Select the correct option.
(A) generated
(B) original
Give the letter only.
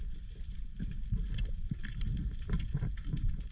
B